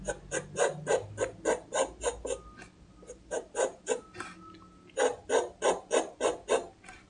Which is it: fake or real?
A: real